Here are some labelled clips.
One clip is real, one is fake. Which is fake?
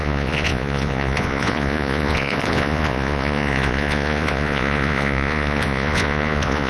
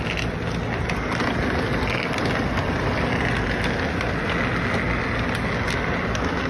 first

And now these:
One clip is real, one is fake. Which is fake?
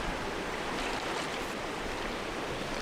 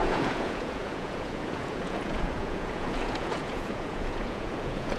second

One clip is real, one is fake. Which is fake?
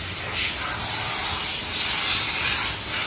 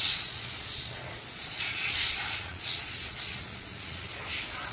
second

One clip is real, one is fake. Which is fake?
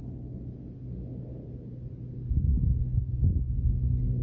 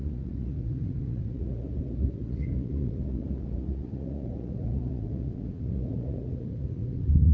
second